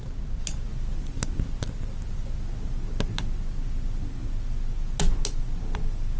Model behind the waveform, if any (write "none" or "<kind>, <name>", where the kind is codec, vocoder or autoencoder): none